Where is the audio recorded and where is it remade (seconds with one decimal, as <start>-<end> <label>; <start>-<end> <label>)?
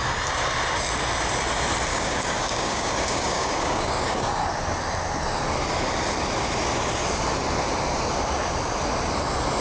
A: 0.0-1.9 recorded; 1.9-4.3 remade; 4.3-9.6 recorded